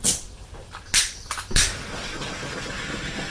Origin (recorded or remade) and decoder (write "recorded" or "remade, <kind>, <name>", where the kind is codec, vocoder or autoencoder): recorded